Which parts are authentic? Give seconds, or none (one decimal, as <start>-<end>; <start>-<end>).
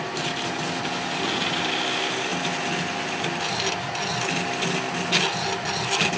0.0-6.2